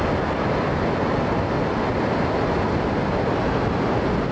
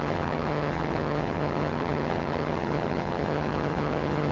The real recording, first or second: first